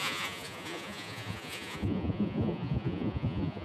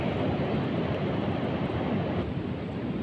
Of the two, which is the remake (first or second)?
first